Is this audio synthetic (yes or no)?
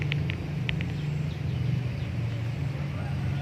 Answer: no